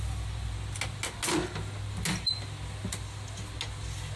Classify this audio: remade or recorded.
recorded